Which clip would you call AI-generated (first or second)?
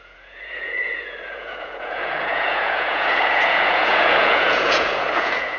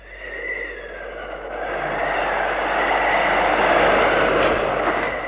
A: first